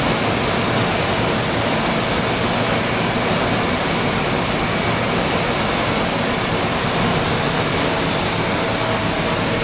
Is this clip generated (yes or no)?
no